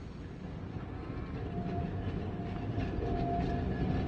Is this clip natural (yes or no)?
yes